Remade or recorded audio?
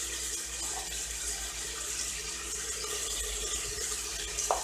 recorded